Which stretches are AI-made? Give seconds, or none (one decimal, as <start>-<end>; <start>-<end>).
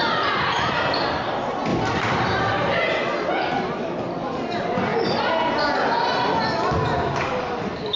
1.7-2.7